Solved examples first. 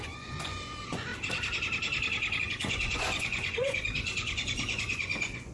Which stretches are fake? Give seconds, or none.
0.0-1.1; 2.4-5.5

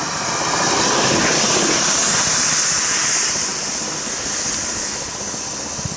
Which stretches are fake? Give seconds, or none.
none

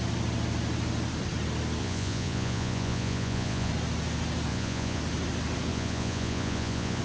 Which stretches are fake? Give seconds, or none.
1.8-3.7; 4.5-5.0; 5.7-7.0

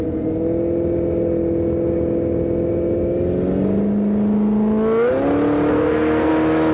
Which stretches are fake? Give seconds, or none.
5.7-6.3

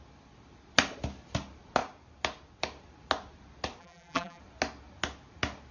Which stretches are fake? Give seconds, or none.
3.8-4.4

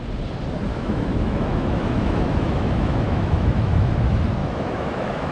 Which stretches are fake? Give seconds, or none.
0.7-3.9; 4.4-5.3

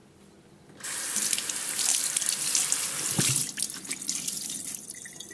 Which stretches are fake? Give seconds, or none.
none

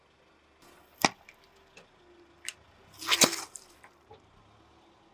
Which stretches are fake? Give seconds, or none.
none